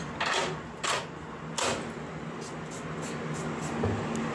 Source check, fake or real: real